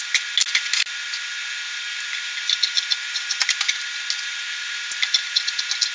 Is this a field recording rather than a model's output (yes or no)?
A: yes